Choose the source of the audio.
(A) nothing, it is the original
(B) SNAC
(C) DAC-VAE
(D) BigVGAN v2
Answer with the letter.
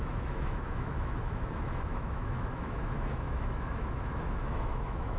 C